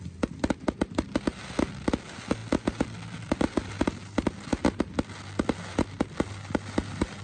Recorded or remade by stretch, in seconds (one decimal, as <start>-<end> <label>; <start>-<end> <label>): 0.0-7.2 recorded